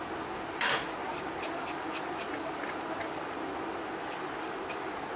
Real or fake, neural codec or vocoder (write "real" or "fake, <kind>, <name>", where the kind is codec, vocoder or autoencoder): real